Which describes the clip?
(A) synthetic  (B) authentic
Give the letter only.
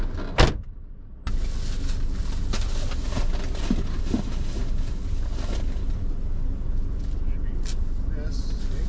B